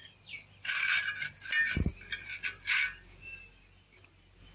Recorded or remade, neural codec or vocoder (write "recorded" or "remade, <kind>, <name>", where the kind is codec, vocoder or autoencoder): recorded